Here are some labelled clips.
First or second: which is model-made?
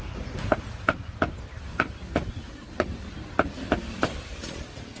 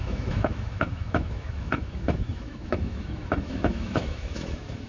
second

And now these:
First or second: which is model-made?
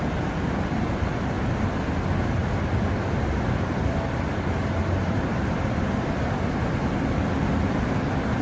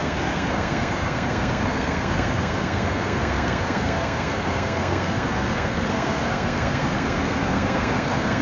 second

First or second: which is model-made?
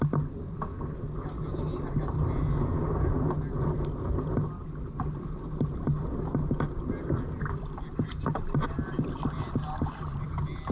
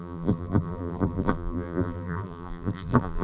second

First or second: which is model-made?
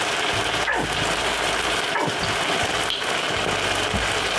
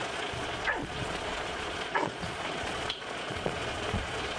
second